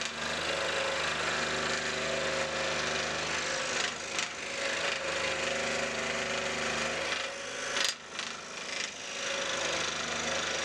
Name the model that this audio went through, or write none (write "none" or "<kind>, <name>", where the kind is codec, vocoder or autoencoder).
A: none